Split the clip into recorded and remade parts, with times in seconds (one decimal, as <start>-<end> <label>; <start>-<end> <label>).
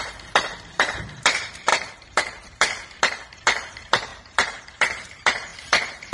0.0-6.1 remade